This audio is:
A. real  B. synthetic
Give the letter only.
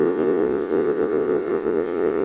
B